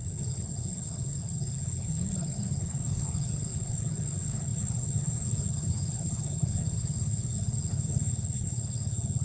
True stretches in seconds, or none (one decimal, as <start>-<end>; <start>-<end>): none